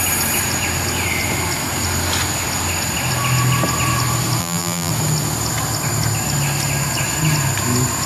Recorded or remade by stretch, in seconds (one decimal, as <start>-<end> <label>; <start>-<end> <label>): 0.0-4.4 recorded; 4.4-4.9 remade; 4.9-8.1 recorded